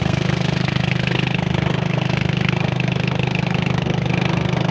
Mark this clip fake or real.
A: fake